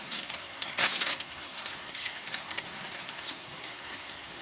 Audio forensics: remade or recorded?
remade